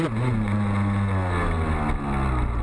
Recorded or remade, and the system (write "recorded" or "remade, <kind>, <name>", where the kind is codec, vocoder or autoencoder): recorded